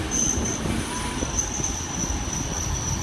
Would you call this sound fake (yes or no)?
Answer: no